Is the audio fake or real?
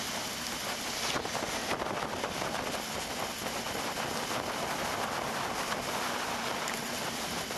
real